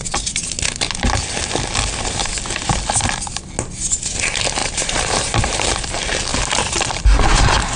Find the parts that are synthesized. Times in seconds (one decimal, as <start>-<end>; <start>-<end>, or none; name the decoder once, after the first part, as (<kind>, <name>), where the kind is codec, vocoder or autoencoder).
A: 4.6-5.7 (vocoder, BigVGAN v2); 6.3-7.0